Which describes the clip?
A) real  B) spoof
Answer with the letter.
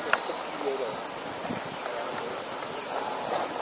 A